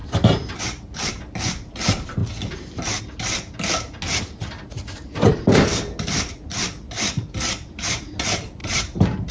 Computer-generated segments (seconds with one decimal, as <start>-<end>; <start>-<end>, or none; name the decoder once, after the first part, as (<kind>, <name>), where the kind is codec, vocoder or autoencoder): 8.6-9.3 (vocoder, BigVGAN v2)